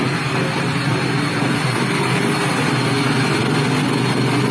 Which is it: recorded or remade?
recorded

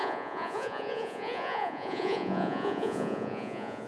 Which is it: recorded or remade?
remade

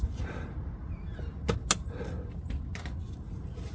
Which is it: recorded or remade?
recorded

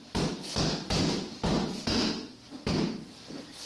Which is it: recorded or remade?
recorded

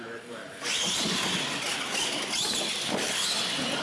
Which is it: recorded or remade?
recorded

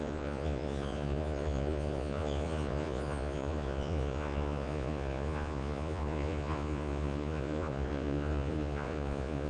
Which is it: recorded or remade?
remade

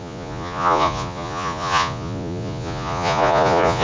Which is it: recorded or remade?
remade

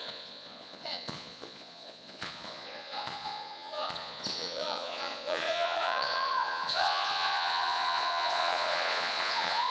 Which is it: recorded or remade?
remade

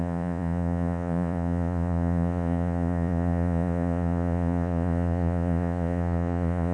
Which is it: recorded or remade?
remade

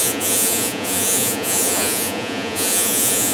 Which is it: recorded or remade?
remade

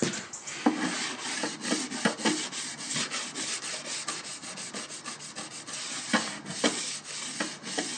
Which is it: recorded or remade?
recorded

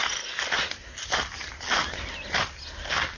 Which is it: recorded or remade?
recorded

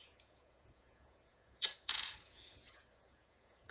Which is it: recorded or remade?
remade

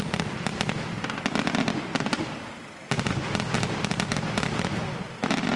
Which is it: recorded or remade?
recorded